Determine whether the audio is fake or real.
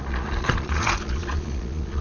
fake